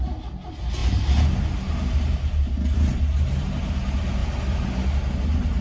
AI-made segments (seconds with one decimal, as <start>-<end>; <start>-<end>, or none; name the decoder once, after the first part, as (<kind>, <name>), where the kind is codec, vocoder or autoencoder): none